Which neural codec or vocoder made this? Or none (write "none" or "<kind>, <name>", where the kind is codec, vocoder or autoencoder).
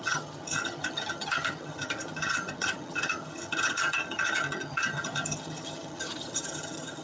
vocoder, HiFi-GAN